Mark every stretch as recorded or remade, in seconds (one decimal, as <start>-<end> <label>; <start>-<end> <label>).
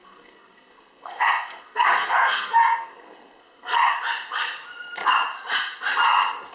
0.0-3.9 remade; 3.9-6.5 recorded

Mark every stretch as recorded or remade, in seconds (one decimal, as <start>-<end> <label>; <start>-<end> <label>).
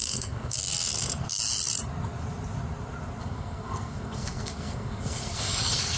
0.0-1.4 remade; 1.4-3.2 recorded; 3.2-6.0 remade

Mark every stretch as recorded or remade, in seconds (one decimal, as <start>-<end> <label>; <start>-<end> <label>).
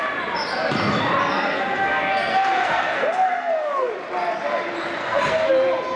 0.0-1.2 recorded; 1.2-3.9 remade; 3.9-5.0 recorded; 5.0-5.5 remade; 5.5-6.0 recorded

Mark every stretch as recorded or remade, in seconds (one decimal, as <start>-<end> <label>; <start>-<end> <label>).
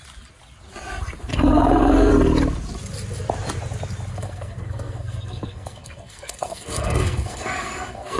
0.0-1.3 recorded; 1.3-2.1 remade; 2.1-4.1 recorded; 4.1-8.2 remade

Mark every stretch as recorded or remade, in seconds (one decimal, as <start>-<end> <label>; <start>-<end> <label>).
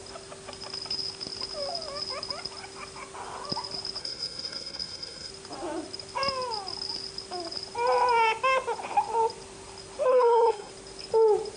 0.0-4.0 recorded; 4.0-5.3 remade; 5.3-10.1 recorded; 10.1-10.7 remade; 10.7-11.6 recorded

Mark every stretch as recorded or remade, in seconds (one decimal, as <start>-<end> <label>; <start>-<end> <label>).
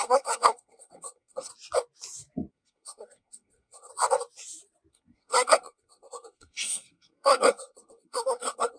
0.0-1.5 remade; 1.5-2.5 recorded; 2.5-3.9 remade; 3.9-4.9 recorded; 4.9-8.8 remade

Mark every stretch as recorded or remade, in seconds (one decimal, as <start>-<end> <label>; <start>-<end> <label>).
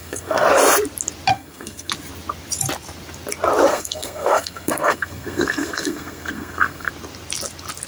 0.0-0.5 remade; 0.5-1.3 recorded; 1.3-1.9 remade; 1.9-3.7 recorded; 3.7-6.9 remade; 6.9-7.9 recorded